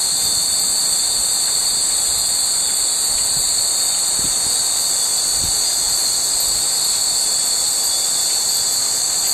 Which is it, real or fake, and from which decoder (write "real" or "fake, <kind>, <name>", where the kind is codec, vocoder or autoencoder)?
real